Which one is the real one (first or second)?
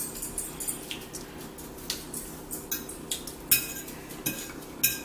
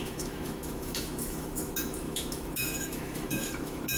first